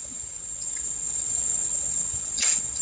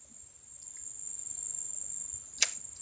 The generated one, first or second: first